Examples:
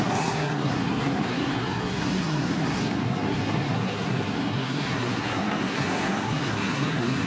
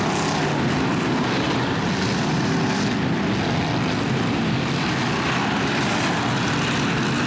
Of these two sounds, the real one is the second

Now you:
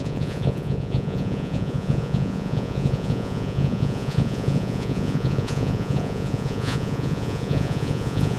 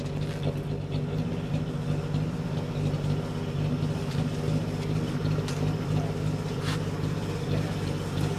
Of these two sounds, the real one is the second